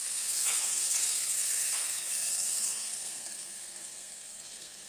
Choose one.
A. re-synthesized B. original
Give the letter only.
A